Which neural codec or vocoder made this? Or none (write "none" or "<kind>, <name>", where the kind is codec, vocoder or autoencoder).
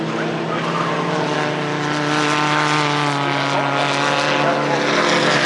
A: none